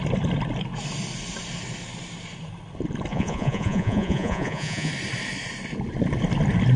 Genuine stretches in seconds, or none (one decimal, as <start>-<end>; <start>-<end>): 0.0-3.1; 4.9-6.8